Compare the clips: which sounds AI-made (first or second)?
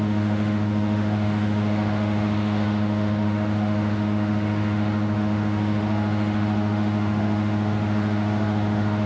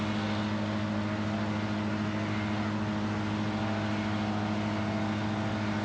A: first